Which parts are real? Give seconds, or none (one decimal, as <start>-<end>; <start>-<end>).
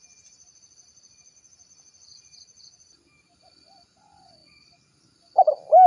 0.0-5.9